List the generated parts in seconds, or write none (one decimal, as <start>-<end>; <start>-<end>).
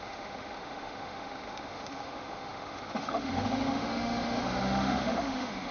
0.0-5.7